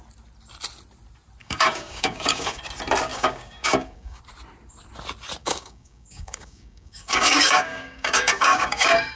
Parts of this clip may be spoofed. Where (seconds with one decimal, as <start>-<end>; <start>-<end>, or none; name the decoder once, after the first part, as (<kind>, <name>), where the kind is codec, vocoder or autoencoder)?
1.4-2.6 (codec, DAC); 3.1-4.2; 5.4-9.2